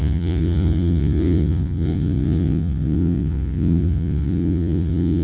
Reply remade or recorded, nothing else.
remade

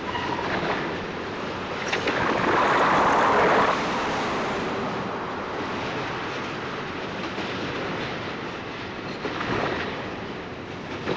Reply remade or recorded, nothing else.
recorded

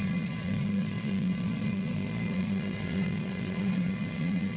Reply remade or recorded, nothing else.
remade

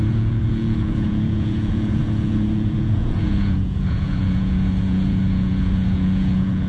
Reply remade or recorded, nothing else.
remade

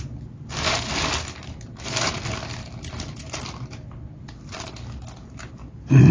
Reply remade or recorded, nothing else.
recorded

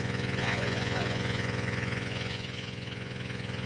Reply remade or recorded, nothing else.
remade